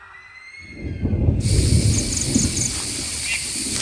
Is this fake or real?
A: real